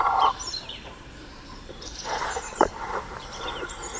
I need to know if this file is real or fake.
fake